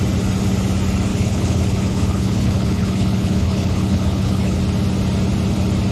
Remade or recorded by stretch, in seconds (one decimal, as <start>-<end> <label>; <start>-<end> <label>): 0.0-1.1 recorded; 1.1-4.6 remade; 4.6-5.9 recorded